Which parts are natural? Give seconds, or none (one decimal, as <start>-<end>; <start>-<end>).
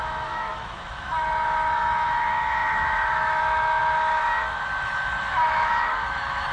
none